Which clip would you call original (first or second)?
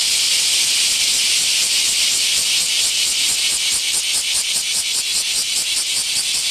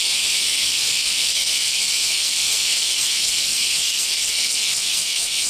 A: first